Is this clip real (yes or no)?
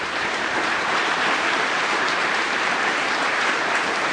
no